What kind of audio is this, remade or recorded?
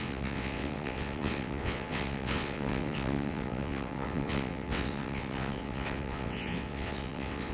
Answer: remade